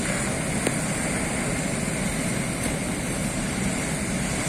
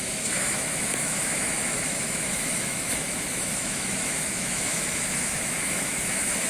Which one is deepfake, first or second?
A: second